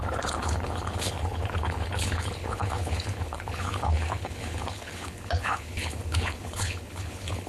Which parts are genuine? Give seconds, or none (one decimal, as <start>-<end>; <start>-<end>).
none